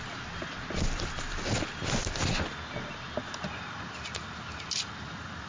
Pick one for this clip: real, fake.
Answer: real